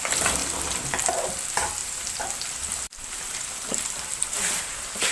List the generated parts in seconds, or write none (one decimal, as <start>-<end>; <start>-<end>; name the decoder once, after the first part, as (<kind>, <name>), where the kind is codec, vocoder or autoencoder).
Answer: 0.0-0.4 (vocoder, BigVGAN v2); 1.1-5.1